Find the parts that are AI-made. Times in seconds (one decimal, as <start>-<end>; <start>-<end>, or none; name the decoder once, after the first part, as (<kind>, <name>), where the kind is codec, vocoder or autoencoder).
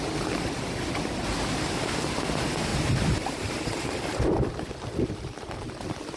2.7-3.4 (vocoder, BigVGAN v2)